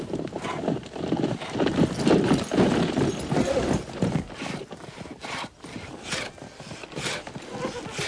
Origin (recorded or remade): recorded